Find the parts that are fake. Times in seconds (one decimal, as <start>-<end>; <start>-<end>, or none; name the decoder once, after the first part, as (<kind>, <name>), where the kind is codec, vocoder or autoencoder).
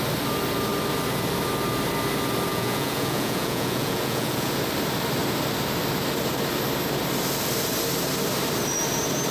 2.5-4.5 (vocoder, Vocos)